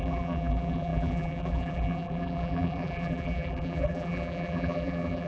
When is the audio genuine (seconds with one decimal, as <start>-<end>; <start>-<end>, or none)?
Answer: none